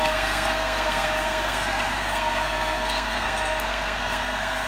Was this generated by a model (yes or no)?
yes